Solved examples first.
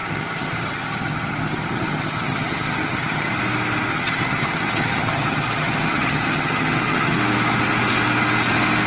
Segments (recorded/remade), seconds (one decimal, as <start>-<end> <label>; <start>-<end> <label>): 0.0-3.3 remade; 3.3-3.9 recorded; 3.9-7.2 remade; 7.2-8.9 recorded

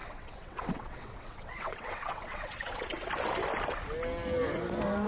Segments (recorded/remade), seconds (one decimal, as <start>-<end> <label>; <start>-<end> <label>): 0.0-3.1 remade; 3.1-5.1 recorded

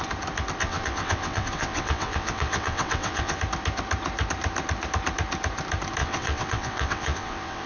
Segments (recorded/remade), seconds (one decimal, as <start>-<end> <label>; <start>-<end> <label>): 0.0-0.6 recorded; 0.6-3.4 remade; 3.4-6.0 recorded; 6.0-7.7 remade

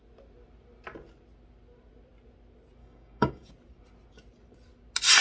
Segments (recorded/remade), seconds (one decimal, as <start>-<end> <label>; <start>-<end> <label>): 0.0-2.8 recorded; 2.8-3.5 remade; 3.5-5.2 recorded

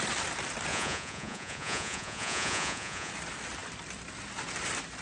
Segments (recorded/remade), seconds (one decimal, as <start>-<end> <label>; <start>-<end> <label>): 0.0-0.7 recorded; 0.7-3.1 remade; 3.1-5.0 recorded